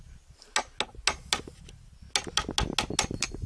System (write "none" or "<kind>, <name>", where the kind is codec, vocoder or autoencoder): none